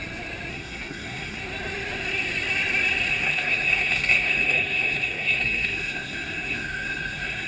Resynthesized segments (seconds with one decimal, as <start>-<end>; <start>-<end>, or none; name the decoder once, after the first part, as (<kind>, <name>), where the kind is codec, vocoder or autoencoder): 0.5-1.4 (codec, SNAC); 3.1-7.5